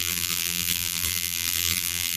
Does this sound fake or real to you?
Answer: fake